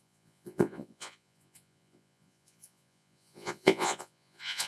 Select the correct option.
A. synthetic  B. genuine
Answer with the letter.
A